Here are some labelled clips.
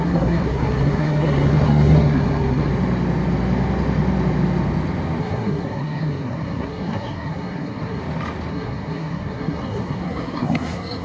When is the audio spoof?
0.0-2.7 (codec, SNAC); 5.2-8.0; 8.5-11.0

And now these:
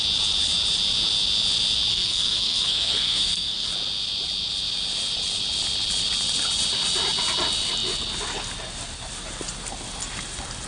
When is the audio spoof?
1.9-3.7 (codec, SNAC)

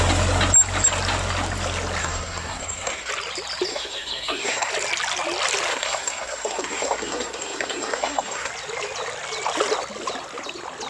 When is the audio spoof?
2.0-3.1 (codec, SNAC); 3.7-4.7; 5.7-8.5